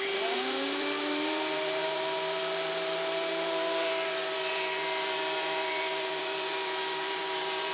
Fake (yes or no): yes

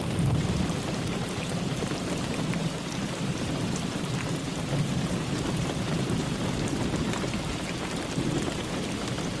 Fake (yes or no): yes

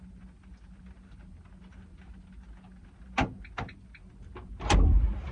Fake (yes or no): no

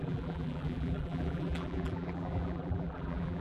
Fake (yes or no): yes